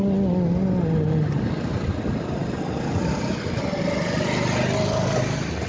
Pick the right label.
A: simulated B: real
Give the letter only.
B